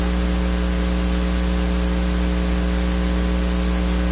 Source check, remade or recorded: recorded